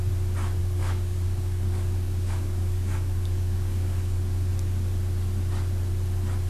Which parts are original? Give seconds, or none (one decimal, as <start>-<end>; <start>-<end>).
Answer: 0.0-0.6; 4.5-6.5